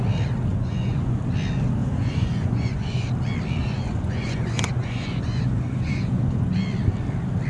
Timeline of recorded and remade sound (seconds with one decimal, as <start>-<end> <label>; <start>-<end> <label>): 0.0-0.5 recorded; 0.5-1.2 remade; 1.2-1.8 recorded; 1.8-3.1 remade; 3.1-3.6 recorded; 3.6-6.5 remade; 6.5-7.5 recorded